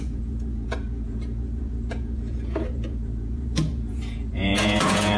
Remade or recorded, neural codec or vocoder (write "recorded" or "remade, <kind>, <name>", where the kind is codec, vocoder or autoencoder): remade, vocoder, Vocos